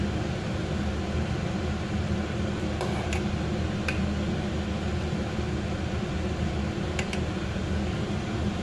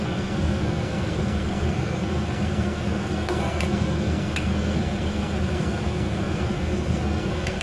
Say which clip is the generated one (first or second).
second